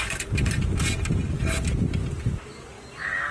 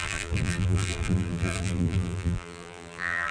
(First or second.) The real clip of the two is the first